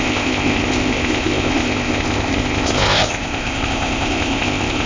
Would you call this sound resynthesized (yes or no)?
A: yes